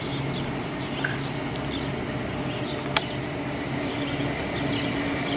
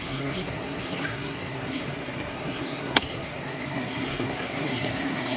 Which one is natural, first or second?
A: first